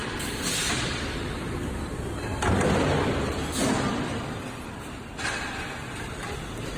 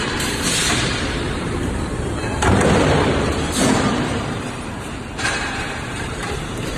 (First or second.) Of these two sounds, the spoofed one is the second